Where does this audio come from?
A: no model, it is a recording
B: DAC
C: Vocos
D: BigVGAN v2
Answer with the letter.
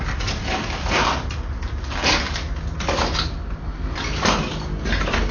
A